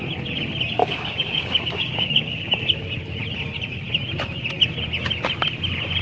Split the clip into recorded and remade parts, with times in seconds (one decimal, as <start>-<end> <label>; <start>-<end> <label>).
0.0-0.8 recorded; 0.8-2.8 remade; 2.8-6.0 recorded